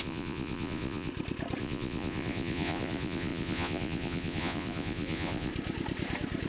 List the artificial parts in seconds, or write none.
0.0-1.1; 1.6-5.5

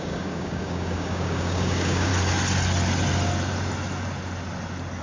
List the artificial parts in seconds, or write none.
0.0-2.1

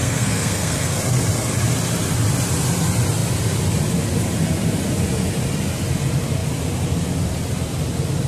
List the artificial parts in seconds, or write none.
0.0-1.0

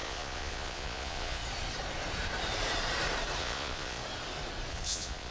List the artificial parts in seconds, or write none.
0.0-1.4; 3.4-4.0; 4.7-5.3

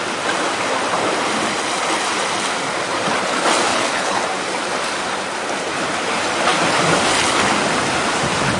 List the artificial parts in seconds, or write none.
3.7-4.2

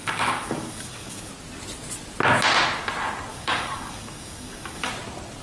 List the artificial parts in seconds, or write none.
0.0-1.3; 3.3-4.9

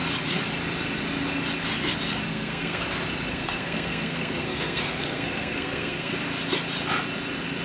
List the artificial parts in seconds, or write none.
2.3-2.8; 3.3-6.1